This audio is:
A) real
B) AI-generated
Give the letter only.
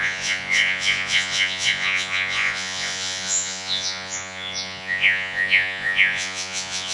B